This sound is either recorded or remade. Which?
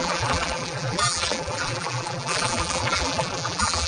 remade